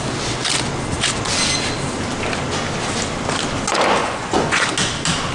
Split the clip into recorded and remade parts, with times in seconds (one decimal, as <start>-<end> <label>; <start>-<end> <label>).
0.0-4.0 recorded; 4.0-4.7 remade; 4.7-5.3 recorded